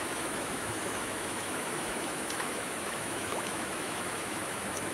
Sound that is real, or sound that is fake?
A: fake